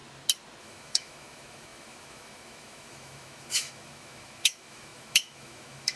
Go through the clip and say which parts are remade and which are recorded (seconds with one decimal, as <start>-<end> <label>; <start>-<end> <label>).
0.0-0.6 recorded; 0.6-6.0 remade

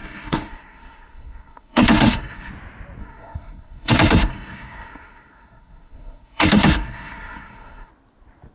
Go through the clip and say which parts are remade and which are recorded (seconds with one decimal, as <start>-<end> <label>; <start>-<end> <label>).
0.0-2.5 remade; 2.5-3.0 recorded; 3.0-7.9 remade; 7.9-8.5 recorded

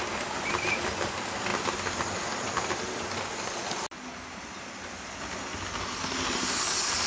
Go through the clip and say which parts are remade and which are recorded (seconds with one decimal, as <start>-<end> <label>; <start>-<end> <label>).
0.0-7.1 recorded

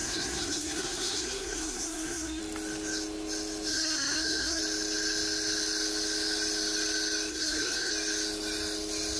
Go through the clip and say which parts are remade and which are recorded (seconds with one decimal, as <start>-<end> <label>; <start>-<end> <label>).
0.0-2.4 remade; 2.4-3.7 recorded; 3.7-4.6 remade; 4.6-7.3 recorded; 7.3-7.9 remade; 7.9-9.2 recorded